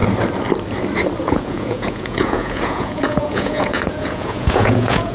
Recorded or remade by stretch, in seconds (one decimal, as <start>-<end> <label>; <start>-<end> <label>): 0.0-1.2 recorded; 1.2-5.1 remade